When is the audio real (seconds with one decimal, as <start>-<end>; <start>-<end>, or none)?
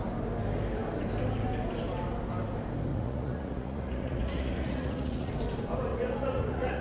0.0-2.9; 5.3-5.9